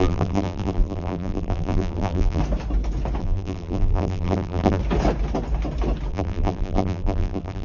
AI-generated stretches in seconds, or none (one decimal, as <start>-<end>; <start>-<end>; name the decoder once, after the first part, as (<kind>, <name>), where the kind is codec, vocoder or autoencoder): 0.0-2.4 (vocoder, BigVGAN v2); 3.2-4.8; 6.1-7.6